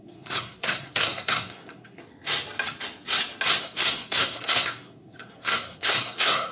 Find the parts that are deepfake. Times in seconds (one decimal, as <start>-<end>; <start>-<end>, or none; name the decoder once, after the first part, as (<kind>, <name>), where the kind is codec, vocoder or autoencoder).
0.0-2.0 (codec, SNAC); 3.6-6.5